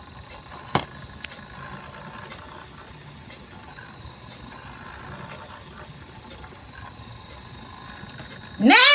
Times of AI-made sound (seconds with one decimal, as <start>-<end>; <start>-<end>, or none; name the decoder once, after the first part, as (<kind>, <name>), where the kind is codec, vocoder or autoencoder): none